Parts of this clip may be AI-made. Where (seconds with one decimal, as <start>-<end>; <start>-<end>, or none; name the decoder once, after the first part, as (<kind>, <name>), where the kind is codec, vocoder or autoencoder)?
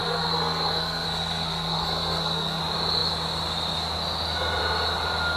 0.0-2.6 (codec, SNAC)